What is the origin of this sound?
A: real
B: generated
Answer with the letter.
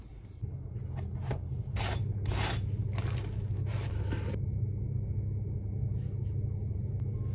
A